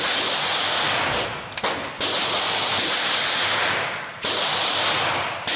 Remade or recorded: recorded